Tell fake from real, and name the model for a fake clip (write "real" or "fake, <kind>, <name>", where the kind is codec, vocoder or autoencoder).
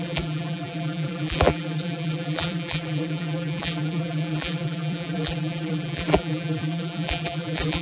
fake, vocoder, BigVGAN v2